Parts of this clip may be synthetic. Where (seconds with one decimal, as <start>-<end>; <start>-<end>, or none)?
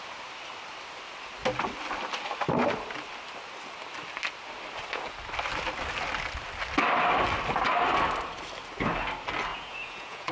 9.5-10.3